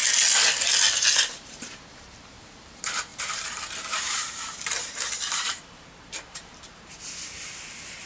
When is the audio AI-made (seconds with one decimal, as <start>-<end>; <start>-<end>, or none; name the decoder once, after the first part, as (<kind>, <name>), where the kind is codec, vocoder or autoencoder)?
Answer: 1.5-8.1 (vocoder, BigVGAN v2)